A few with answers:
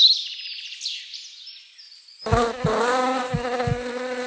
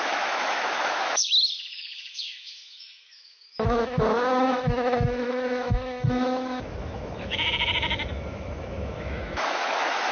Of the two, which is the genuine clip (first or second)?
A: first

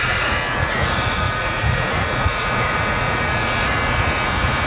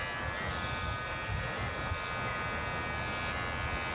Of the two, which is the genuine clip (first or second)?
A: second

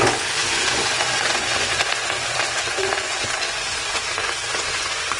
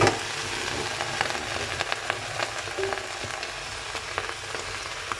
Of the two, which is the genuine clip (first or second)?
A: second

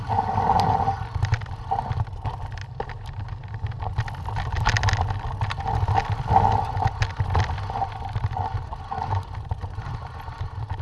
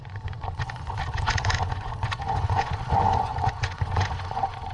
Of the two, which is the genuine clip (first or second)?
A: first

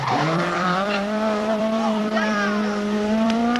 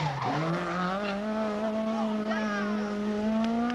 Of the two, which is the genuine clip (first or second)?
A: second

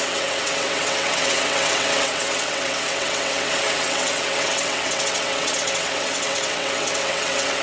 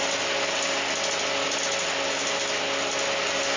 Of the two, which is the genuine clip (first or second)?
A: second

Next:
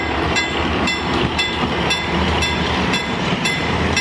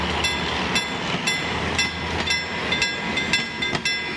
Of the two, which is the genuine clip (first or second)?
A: second